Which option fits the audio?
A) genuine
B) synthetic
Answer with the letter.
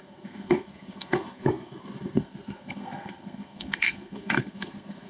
B